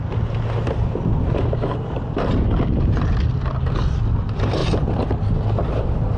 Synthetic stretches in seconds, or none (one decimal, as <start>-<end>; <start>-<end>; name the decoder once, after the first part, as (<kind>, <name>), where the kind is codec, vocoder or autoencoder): none